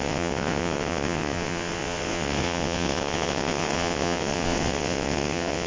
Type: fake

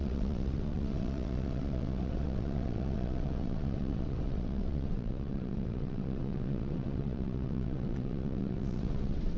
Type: fake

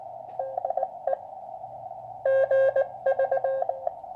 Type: real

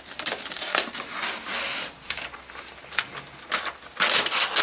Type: real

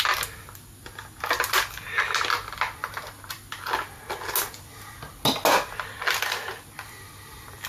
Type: real